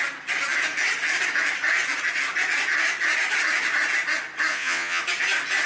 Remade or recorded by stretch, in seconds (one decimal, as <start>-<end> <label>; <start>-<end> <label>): 0.0-4.5 recorded; 4.5-5.0 remade; 5.0-5.7 recorded

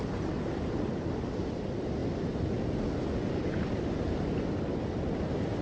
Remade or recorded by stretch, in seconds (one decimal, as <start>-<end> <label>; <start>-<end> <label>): 0.0-5.6 recorded

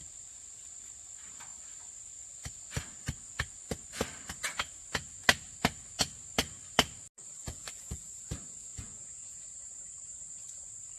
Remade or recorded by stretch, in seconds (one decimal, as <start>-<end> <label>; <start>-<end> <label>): 0.0-7.4 recorded; 7.4-8.1 remade; 8.1-8.7 recorded; 8.7-9.4 remade; 9.4-11.0 recorded

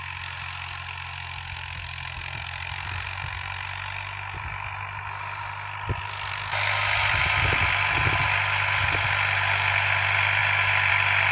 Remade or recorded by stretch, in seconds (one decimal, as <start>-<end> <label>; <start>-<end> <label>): 0.0-11.3 recorded

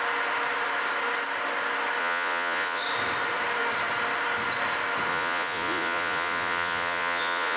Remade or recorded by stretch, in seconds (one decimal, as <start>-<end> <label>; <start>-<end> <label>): 0.0-2.0 recorded; 2.0-2.8 remade; 2.8-5.1 recorded; 5.1-7.6 remade

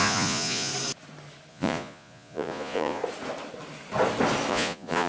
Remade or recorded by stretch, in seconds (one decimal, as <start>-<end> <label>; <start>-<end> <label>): 0.0-0.7 remade; 0.7-1.5 recorded; 1.5-3.0 remade; 3.0-4.5 recorded; 4.5-5.1 remade

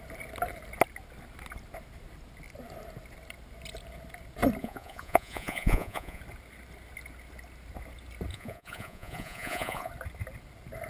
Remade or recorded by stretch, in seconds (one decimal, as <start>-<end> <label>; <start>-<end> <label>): 0.0-4.6 recorded; 4.6-6.2 remade; 6.2-8.3 recorded; 8.3-9.9 remade; 9.9-10.9 recorded

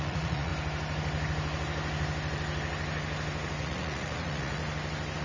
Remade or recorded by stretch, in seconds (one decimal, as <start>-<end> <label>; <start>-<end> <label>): 0.0-0.5 remade; 0.5-3.6 recorded; 3.6-4.6 remade; 4.6-5.2 recorded